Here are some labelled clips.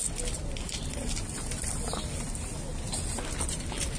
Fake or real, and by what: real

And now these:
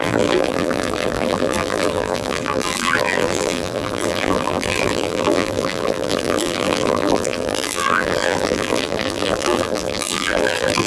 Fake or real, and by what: fake, vocoder, BigVGAN v2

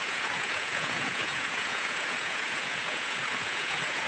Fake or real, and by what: fake, vocoder, Vocos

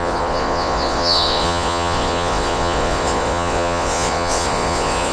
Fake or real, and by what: fake, vocoder, Vocos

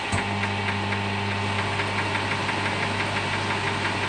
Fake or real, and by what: real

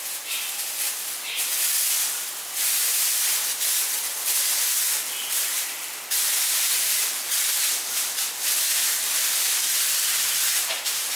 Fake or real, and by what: real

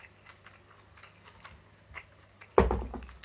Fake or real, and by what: real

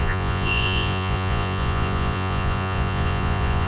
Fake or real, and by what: fake, vocoder, Vocos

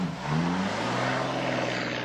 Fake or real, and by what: real